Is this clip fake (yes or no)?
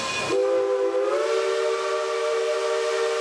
no